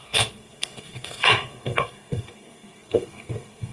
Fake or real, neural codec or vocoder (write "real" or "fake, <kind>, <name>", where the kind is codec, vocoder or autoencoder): fake, codec, SNAC